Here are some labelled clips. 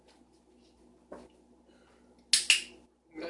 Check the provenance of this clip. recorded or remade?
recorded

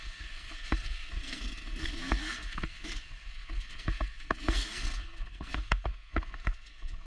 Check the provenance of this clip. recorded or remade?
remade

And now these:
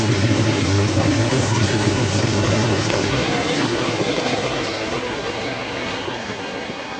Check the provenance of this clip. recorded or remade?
remade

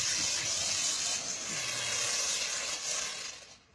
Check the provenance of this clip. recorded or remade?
recorded